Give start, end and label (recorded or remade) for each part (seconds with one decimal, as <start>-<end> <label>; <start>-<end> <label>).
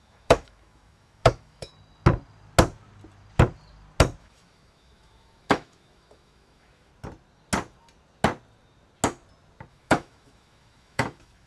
0.0-1.7 remade; 1.7-4.2 recorded; 4.2-6.9 remade; 6.9-9.7 recorded; 9.7-11.5 remade